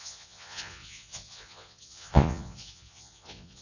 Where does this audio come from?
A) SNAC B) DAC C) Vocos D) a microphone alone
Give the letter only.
C